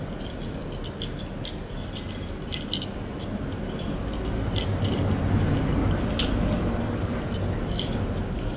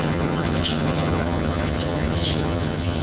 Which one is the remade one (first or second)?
second